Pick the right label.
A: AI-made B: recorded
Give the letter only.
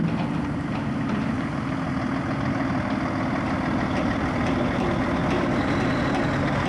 B